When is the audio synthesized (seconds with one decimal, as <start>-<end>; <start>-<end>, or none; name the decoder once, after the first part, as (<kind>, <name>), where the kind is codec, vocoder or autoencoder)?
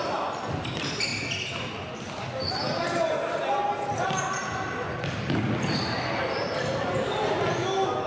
none